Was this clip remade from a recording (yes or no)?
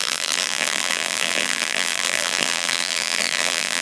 yes